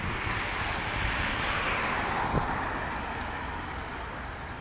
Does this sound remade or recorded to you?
recorded